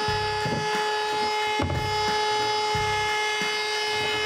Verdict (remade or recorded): recorded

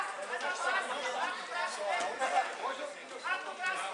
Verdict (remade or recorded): recorded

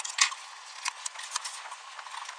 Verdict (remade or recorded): remade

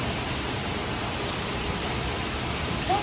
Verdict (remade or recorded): remade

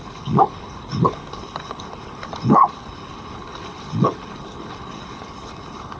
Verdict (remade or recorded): remade